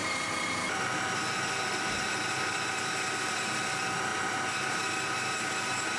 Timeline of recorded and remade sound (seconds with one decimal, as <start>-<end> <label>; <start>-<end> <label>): 0.0-6.0 remade